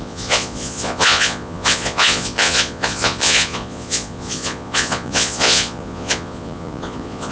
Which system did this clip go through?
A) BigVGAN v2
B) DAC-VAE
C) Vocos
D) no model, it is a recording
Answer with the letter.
C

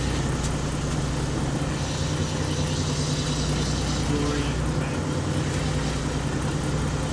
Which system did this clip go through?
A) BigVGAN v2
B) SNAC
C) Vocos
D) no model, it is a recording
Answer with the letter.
D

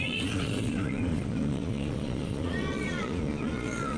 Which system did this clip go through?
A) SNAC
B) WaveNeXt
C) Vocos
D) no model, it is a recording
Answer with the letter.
C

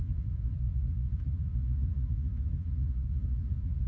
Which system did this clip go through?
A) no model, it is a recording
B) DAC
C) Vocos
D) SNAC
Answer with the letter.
C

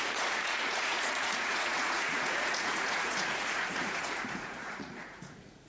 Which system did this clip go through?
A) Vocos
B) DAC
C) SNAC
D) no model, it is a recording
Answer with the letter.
A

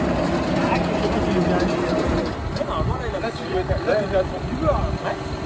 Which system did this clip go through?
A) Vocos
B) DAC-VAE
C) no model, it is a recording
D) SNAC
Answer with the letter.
C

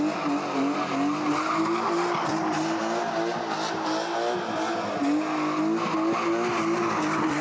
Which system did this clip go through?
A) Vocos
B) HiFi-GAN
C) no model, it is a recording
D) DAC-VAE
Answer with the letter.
C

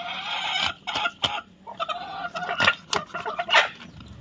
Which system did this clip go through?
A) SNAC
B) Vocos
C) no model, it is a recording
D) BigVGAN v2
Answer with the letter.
C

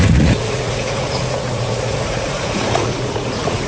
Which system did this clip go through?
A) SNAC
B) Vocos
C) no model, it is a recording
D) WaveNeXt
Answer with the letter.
B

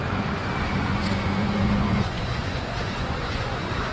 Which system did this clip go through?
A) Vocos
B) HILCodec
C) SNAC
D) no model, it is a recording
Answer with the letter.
A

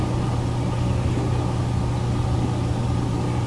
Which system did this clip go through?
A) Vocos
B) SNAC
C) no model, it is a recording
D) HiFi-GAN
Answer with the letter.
C